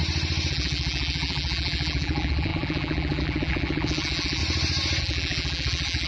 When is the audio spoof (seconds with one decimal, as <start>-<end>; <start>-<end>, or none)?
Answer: 0.5-4.4; 5.0-6.1